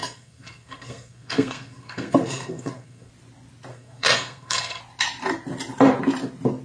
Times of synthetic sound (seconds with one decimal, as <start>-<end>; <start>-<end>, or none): 0.0-3.1; 3.7-4.8